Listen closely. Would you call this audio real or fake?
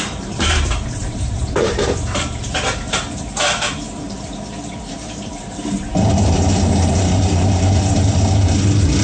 fake